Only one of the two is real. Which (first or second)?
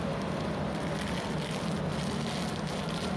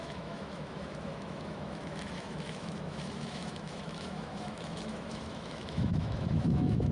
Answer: first